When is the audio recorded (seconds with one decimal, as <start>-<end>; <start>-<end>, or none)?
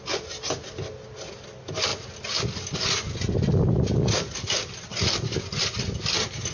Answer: 0.0-6.5